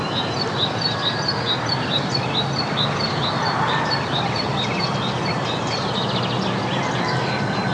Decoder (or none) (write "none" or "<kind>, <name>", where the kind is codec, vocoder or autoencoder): none